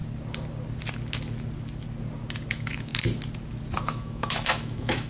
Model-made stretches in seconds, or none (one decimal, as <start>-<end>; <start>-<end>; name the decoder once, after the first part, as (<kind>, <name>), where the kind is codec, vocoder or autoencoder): 2.5-2.9 (autoencoder, DAC-VAE); 3.8-5.1